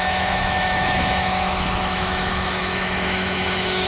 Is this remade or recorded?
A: remade